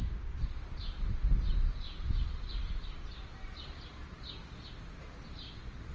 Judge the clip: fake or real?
real